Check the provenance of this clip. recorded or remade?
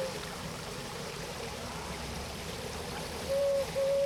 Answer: remade